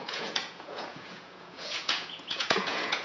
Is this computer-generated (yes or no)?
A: yes